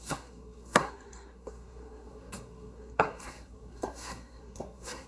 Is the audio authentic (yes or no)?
no